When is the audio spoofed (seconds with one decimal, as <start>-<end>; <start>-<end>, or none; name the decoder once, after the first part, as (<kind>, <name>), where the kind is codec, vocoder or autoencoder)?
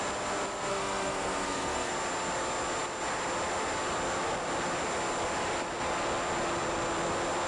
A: 0.7-1.9 (codec, SNAC)